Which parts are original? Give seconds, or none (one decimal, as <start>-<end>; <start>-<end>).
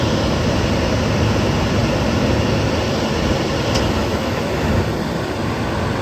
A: 0.0-4.0; 4.5-6.0